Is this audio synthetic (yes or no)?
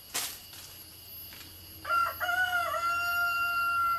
no